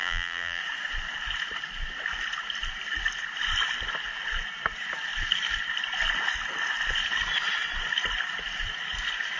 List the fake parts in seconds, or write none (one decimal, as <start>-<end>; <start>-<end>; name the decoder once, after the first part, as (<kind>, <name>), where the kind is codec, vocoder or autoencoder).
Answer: 0.0-0.6 (vocoder, BigVGAN v2)